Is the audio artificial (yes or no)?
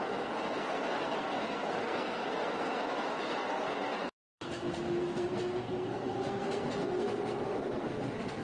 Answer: yes